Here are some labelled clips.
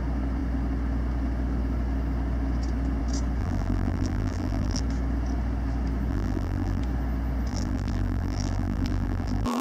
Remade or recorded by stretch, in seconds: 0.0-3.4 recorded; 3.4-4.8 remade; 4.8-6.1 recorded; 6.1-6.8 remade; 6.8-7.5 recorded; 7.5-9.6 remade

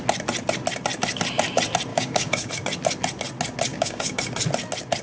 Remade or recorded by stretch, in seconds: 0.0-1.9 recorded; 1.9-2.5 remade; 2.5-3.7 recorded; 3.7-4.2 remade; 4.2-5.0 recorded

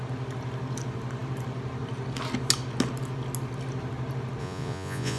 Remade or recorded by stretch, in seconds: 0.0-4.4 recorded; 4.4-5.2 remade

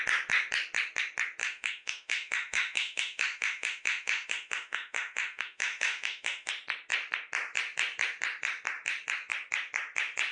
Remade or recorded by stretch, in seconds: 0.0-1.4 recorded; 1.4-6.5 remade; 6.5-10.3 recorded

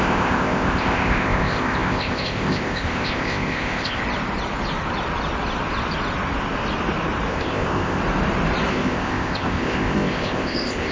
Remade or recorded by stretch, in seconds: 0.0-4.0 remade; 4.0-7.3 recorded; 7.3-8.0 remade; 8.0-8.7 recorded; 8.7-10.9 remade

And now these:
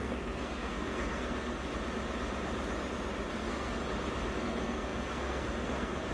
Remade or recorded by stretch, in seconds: 0.0-1.7 remade; 1.7-3.3 recorded; 3.3-3.8 remade; 3.8-4.4 recorded; 4.4-6.1 remade

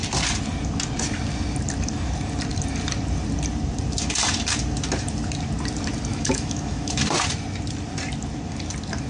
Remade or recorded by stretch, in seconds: 0.0-6.1 recorded; 6.1-7.0 remade; 7.0-9.1 recorded